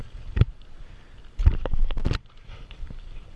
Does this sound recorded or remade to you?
recorded